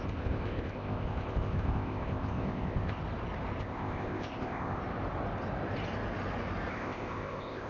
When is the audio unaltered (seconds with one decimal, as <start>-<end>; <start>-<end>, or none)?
3.0-3.6; 4.8-6.7